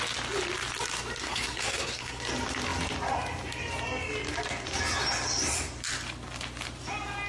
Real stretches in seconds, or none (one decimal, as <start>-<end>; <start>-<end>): 0.0-1.2; 2.2-7.3